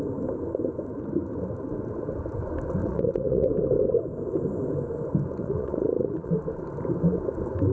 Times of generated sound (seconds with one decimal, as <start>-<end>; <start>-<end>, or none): 2.8-3.5; 5.4-6.3